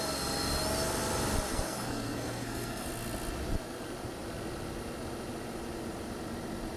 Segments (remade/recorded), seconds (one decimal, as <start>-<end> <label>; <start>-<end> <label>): 0.0-1.5 recorded; 1.5-2.9 remade; 2.9-6.8 recorded